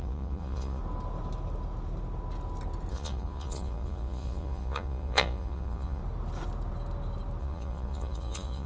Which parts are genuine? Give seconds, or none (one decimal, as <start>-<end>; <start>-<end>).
0.8-2.9; 6.0-7.4